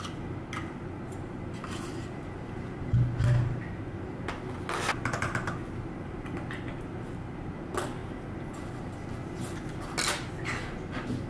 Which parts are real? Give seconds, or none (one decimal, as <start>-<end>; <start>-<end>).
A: 0.0-11.3